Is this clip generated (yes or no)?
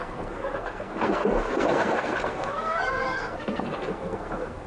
yes